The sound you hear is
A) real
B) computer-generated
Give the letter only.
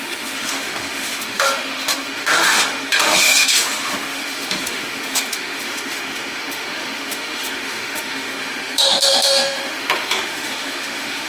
B